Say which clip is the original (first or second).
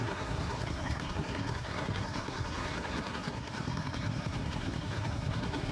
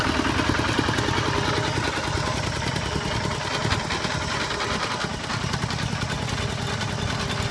second